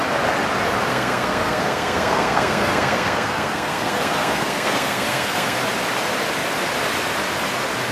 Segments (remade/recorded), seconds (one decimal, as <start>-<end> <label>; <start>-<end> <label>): 0.0-0.9 recorded; 0.9-5.6 remade; 5.6-7.9 recorded